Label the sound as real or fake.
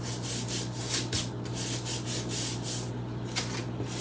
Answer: real